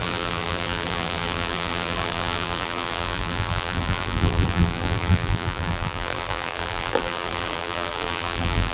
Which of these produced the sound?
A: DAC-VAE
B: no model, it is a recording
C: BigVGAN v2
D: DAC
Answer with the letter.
C